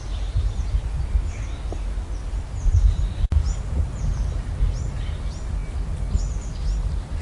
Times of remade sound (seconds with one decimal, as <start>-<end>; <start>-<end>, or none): none